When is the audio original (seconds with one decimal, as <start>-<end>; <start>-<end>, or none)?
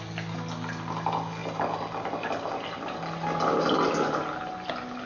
0.0-5.1